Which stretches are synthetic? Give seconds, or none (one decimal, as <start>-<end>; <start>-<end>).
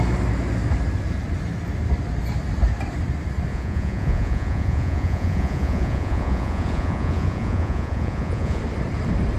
3.5-8.6